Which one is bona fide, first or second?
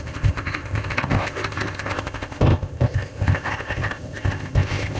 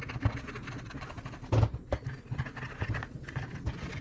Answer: second